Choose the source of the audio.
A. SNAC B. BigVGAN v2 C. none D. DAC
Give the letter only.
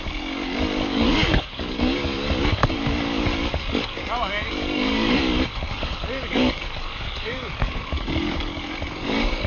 D